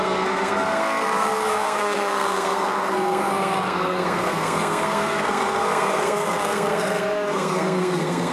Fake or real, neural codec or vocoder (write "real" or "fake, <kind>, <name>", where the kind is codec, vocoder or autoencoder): fake, codec, SNAC